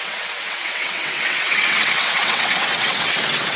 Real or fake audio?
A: fake